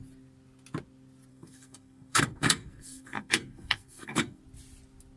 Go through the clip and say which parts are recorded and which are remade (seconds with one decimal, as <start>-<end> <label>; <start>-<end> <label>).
0.0-1.3 recorded; 1.3-4.4 remade; 4.4-5.2 recorded